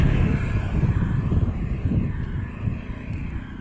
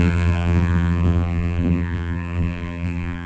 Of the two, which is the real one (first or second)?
first